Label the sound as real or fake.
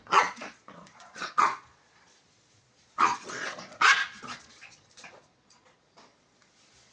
fake